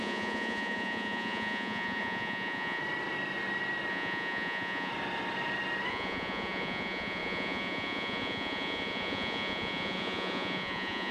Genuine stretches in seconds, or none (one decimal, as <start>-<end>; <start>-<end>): 2.8-3.9; 4.9-5.9